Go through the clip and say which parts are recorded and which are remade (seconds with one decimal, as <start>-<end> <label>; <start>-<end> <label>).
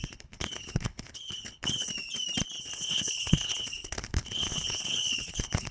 0.0-1.9 remade; 1.9-2.6 recorded; 2.6-5.7 remade